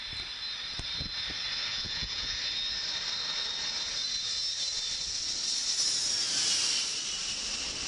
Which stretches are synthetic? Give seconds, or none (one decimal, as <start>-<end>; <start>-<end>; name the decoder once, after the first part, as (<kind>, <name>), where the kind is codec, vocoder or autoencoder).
1.7-2.4 (vocoder, Vocos)